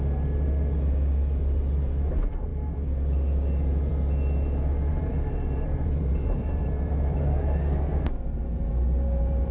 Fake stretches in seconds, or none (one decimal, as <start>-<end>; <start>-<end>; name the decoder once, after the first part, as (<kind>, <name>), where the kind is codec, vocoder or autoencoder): 4.9-9.5 (vocoder, BigVGAN v2)